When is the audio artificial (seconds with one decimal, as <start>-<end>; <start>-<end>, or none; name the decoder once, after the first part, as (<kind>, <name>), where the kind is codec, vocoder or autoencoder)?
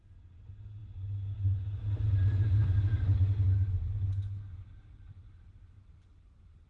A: none